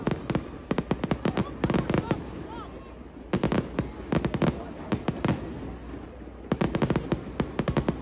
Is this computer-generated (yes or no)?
no